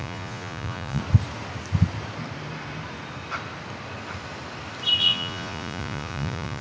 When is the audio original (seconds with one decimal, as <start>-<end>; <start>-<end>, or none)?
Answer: 1.0-5.0